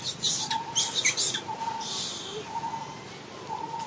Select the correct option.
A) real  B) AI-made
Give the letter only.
A